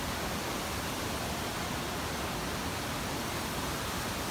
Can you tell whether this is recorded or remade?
recorded